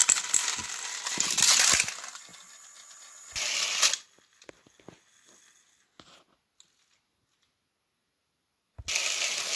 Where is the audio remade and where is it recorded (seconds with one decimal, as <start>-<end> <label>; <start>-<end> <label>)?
0.0-9.6 recorded